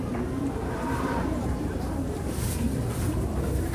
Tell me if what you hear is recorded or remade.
remade